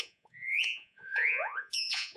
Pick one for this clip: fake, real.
fake